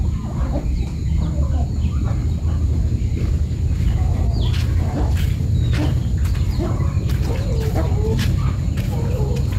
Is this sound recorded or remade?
recorded